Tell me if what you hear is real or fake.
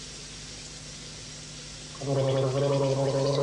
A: real